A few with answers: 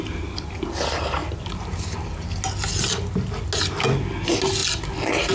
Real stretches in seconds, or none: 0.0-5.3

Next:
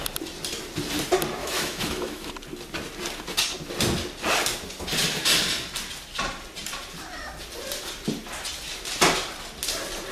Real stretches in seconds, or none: 0.0-1.4; 2.3-10.1

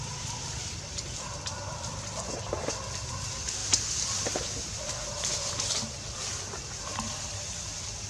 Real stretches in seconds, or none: 0.0-8.1

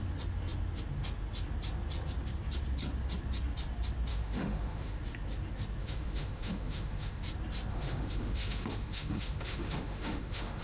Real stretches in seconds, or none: 0.0-4.1; 5.0-5.8; 7.2-7.7

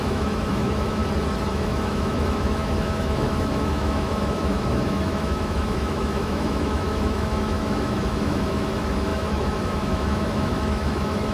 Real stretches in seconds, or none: 1.0-1.5

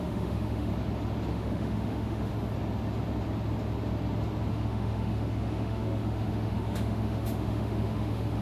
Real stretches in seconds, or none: 0.7-1.3; 2.3-4.5